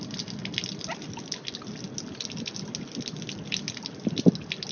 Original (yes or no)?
yes